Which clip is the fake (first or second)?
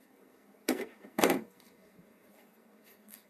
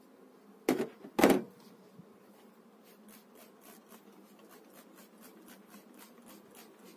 first